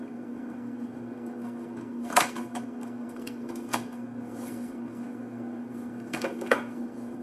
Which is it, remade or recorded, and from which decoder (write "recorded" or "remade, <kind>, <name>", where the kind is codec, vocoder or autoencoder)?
remade, codec, SNAC